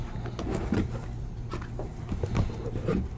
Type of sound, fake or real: real